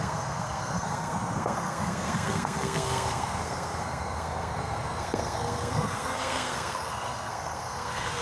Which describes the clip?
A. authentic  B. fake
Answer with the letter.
B